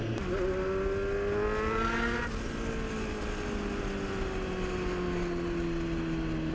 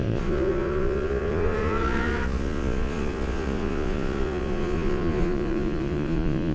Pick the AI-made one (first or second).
second